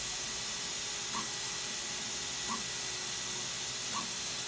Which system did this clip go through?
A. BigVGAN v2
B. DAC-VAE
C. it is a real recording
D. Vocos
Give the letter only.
C